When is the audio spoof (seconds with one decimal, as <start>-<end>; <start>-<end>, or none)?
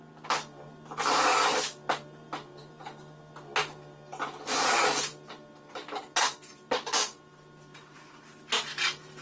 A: none